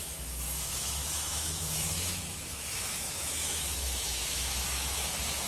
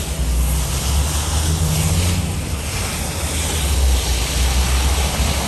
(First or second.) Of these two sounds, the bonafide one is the second